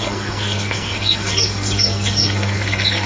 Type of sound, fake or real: fake